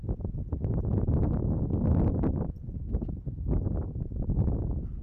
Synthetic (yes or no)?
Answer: yes